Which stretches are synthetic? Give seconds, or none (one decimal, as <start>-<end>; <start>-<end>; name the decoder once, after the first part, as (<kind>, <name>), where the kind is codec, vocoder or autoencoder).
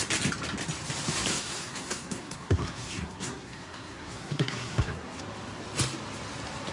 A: 1.3-5.2 (codec, SNAC)